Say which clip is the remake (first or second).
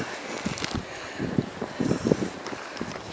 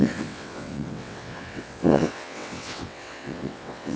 second